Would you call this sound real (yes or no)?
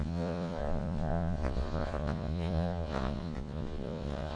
no